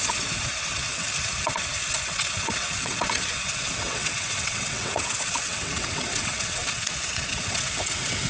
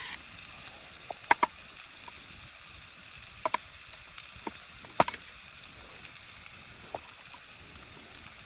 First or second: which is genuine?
second